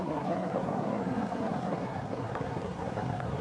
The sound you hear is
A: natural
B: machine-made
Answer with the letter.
B